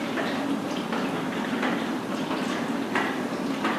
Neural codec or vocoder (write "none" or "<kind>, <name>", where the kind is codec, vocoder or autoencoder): none